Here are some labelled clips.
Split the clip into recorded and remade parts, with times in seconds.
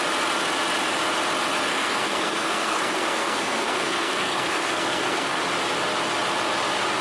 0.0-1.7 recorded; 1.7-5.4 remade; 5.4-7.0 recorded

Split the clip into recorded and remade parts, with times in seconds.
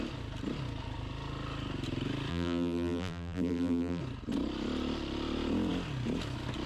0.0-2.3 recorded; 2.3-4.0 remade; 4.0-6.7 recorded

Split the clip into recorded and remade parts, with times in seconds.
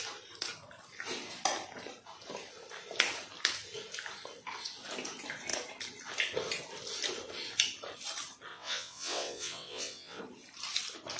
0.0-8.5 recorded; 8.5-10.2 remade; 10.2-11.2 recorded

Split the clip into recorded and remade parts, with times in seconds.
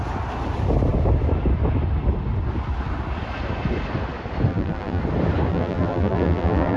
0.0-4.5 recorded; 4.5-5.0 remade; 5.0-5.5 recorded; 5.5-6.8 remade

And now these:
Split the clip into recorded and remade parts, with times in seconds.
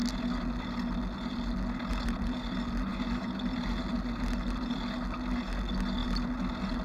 0.0-6.8 recorded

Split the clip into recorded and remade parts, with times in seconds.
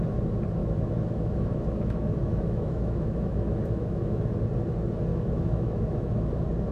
0.0-0.6 recorded; 0.6-4.4 remade; 4.4-5.1 recorded; 5.1-6.3 remade; 6.3-6.7 recorded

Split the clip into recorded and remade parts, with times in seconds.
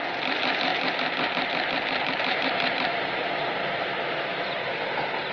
0.0-0.7 recorded; 0.7-3.3 remade; 3.3-4.3 recorded; 4.3-5.3 remade